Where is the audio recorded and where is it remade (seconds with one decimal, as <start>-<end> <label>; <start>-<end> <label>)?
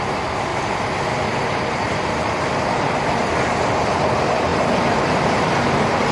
0.0-0.5 remade; 0.5-1.7 recorded; 1.7-6.1 remade